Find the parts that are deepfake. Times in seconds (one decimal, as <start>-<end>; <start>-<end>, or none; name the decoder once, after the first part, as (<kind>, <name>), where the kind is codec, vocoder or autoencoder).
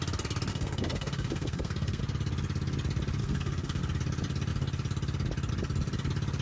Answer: 0.5-2.0 (codec, SNAC); 3.2-3.8